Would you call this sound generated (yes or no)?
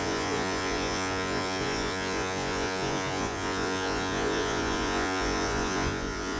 yes